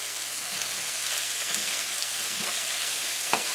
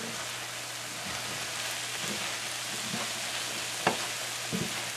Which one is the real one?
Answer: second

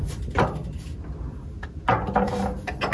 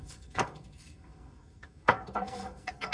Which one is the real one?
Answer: first